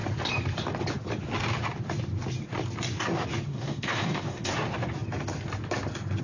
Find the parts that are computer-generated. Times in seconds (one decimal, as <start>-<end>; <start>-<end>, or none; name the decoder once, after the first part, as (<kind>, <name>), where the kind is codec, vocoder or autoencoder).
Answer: 3.5-4.5 (codec, DAC)